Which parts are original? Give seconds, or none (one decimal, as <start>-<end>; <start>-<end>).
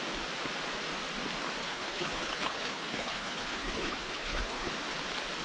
0.0-1.6; 4.7-5.4